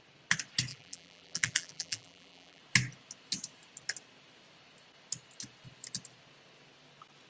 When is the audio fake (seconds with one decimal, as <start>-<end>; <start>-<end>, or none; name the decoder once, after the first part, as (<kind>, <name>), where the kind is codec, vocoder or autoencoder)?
0.7-2.6 (vocoder, BigVGAN v2)